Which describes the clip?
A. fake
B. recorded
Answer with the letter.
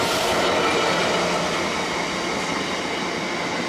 B